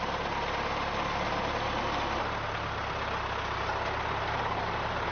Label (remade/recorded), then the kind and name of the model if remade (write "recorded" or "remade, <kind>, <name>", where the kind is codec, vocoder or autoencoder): recorded